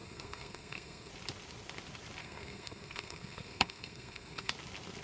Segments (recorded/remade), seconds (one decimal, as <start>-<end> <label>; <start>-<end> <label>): 0.0-1.1 remade; 1.1-2.2 recorded; 2.2-4.5 remade; 4.5-5.0 recorded